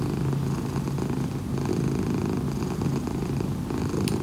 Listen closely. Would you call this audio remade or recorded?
recorded